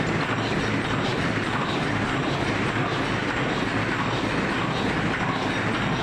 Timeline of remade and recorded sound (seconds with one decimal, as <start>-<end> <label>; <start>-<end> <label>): 0.0-1.1 recorded; 1.1-2.0 remade; 2.0-3.2 recorded; 3.2-4.2 remade; 4.2-6.0 recorded

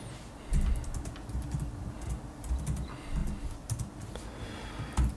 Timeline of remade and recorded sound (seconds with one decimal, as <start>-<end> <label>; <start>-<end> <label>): 0.0-5.2 recorded

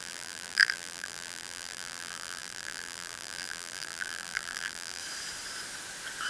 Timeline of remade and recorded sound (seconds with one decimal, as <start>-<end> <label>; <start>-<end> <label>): 0.0-5.0 remade; 5.0-6.3 recorded

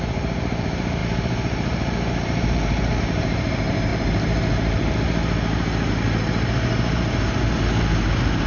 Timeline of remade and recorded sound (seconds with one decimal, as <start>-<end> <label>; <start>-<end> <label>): 0.0-8.5 remade